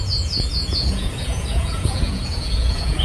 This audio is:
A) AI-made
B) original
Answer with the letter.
A